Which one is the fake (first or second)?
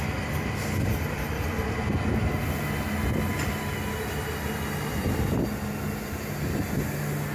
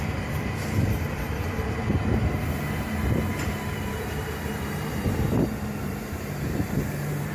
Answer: second